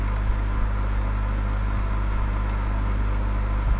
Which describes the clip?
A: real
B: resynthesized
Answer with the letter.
A